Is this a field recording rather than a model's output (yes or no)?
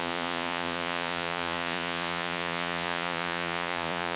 no